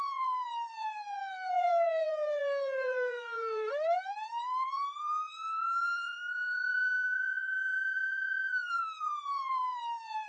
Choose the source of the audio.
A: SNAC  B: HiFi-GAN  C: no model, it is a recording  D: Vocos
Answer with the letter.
D